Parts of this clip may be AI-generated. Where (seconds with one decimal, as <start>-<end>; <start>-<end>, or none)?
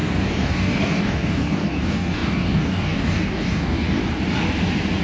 0.0-4.0